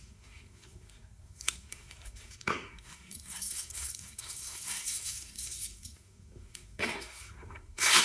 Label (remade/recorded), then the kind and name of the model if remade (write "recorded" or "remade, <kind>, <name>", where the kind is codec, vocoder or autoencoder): remade, codec, SNAC